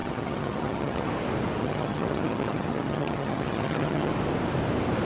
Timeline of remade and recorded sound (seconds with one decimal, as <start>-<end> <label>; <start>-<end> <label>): 0.0-1.1 remade; 1.1-1.6 recorded; 1.6-4.1 remade; 4.1-5.0 recorded